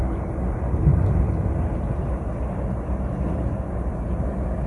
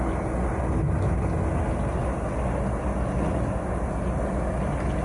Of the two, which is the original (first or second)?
second